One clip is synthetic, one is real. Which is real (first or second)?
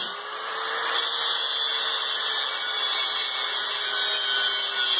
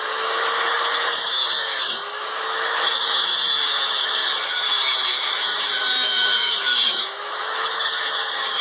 first